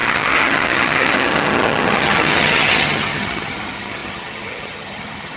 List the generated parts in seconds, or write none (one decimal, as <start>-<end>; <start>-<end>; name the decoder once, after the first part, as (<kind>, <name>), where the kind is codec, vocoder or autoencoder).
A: 0.0-5.4 (vocoder, HiFi-GAN)